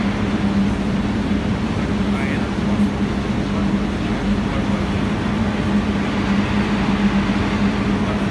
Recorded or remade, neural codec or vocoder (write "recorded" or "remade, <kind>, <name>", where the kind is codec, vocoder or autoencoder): recorded